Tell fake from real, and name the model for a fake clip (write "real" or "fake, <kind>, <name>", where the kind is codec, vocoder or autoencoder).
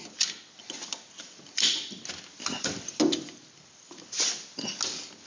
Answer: real